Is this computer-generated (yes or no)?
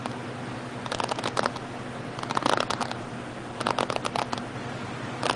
no